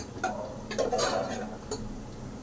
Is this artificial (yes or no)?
no